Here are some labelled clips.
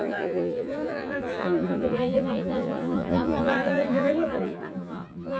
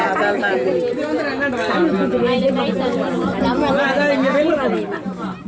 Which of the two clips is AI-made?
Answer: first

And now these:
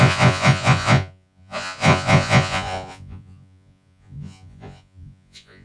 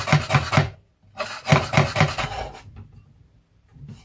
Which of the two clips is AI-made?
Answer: first